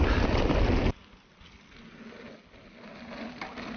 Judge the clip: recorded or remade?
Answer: recorded